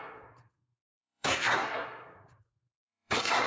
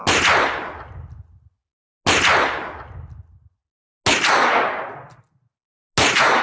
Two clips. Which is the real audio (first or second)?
second